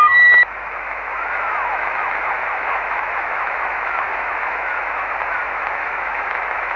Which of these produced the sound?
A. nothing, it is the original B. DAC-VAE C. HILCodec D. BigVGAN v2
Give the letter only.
B